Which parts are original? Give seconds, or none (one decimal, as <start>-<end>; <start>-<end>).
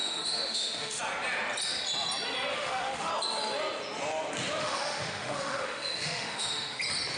1.0-2.5; 3.1-4.6; 6.8-7.2